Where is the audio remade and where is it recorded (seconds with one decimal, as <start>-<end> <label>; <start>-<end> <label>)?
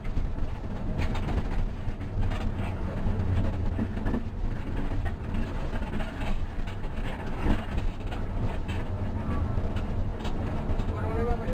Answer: 0.0-11.5 recorded